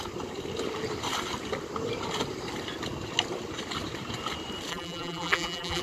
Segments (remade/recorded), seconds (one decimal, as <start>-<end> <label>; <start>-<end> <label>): 0.0-4.7 recorded; 4.7-5.8 remade